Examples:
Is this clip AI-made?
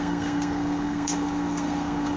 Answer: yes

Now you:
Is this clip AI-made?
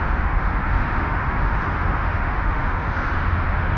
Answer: yes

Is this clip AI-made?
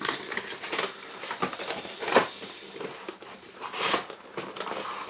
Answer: no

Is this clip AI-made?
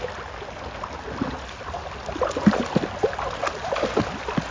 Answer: no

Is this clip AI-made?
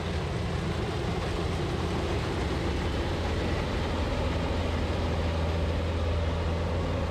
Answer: no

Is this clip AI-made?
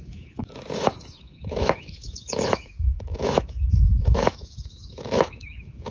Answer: yes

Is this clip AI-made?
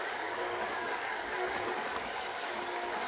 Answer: yes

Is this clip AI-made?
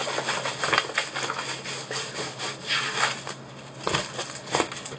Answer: no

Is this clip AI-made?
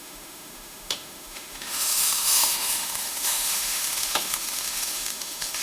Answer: yes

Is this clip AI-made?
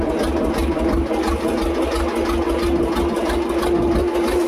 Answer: no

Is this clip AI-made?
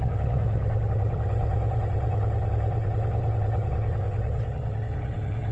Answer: yes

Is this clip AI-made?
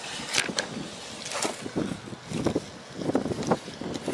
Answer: no